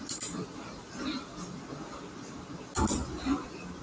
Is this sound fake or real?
real